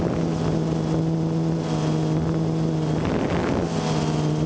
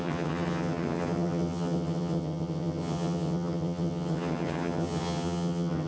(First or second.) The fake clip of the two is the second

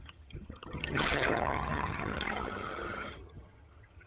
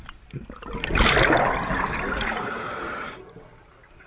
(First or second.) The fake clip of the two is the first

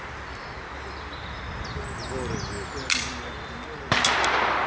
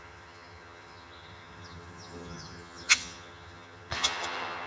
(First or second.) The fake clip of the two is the second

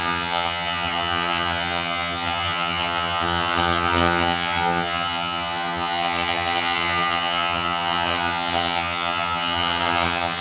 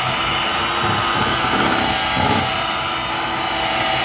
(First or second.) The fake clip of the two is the first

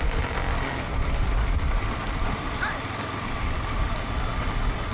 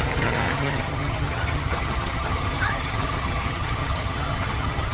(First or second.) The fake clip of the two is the second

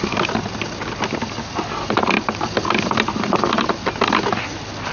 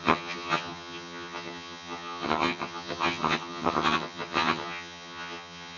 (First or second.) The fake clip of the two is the second